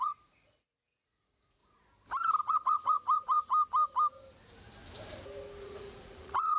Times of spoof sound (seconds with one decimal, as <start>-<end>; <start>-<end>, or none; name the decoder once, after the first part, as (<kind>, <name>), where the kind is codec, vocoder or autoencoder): 0.0-1.6 (vocoder, Vocos); 2.4-3.5; 5.6-6.6